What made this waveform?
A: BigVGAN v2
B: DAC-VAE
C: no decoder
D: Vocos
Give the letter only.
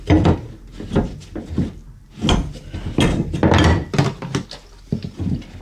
C